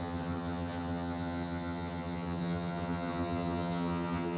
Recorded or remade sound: remade